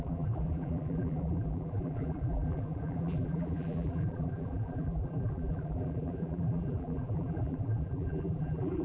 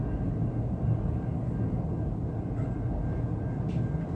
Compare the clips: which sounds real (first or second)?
second